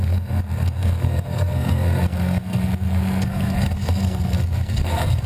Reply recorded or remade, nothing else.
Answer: remade